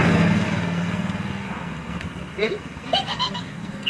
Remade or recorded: remade